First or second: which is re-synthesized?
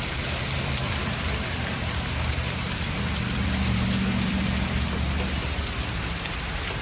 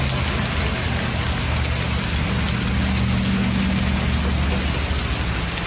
first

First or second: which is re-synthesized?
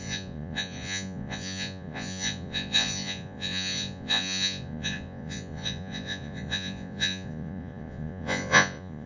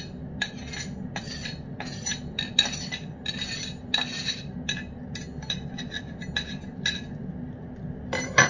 first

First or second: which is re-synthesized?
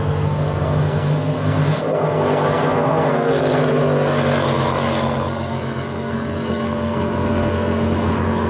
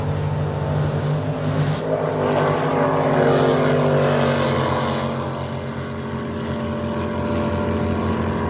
first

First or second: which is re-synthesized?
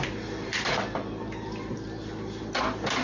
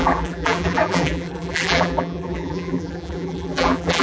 second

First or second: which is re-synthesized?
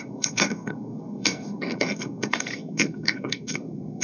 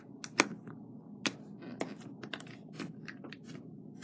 first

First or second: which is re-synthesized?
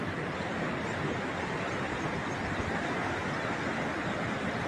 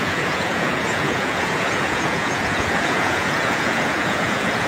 second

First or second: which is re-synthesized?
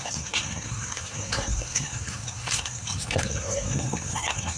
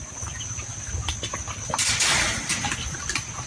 first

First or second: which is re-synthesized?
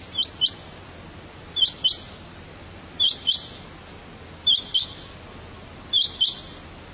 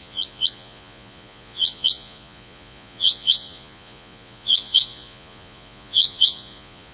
second